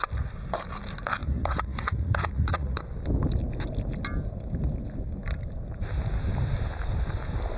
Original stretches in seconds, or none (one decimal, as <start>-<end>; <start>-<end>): 0.0-1.2; 2.8-7.6